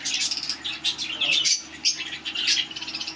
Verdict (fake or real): real